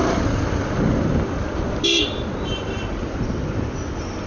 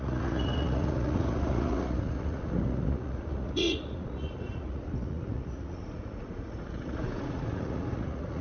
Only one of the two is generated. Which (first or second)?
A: second